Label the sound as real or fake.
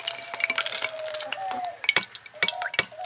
real